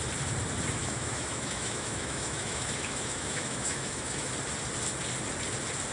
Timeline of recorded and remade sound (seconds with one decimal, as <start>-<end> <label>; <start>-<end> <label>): 0.0-0.8 recorded; 0.8-4.3 remade; 4.3-5.9 recorded